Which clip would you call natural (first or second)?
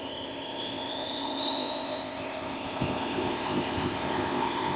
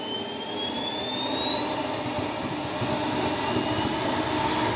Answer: second